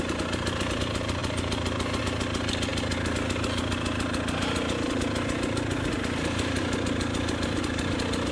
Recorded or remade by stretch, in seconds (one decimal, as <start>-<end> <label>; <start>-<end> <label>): 0.0-1.2 recorded; 1.2-2.0 remade; 2.0-8.3 recorded